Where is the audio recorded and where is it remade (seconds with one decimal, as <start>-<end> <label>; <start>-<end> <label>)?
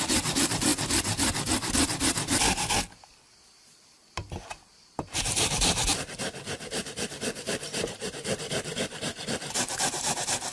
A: 0.0-0.7 remade; 0.7-5.2 recorded; 5.2-10.5 remade